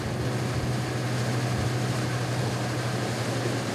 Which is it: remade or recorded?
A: recorded